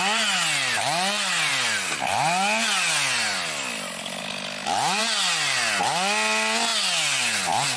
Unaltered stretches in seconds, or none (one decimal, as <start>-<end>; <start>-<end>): 0.0-7.8